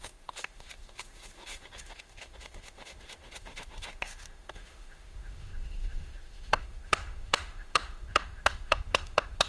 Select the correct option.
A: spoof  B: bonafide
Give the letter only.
A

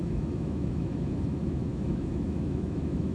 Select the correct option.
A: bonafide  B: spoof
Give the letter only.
B